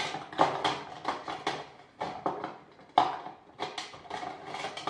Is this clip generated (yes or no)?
no